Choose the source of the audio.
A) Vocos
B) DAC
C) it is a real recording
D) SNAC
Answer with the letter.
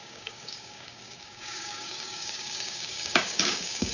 B